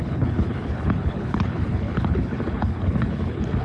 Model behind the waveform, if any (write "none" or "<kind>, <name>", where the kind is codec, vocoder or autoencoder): codec, HILCodec